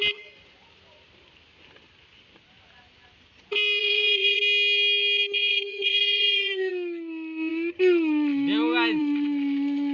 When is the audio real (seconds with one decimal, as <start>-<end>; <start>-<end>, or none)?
0.0-3.8; 4.4-5.5; 6.7-9.9